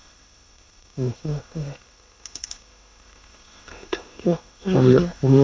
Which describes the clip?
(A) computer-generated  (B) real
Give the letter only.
A